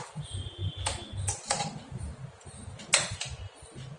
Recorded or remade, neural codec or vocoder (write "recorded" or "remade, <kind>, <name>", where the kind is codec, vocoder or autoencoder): recorded